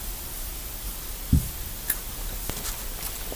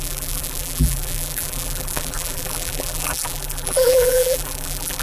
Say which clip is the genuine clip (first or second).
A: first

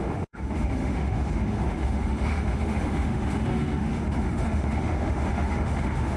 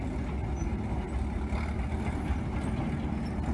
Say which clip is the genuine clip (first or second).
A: second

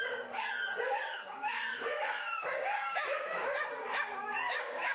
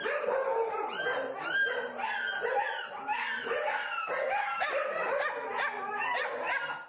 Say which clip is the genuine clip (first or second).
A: second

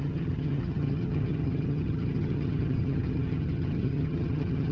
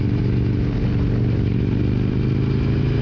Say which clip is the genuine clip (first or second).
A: second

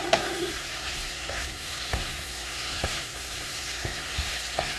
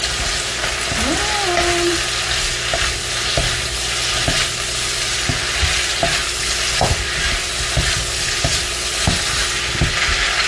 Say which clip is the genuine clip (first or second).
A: second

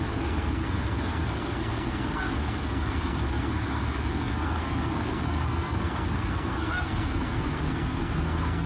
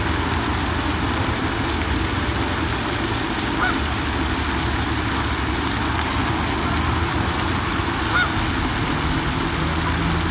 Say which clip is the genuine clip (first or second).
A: second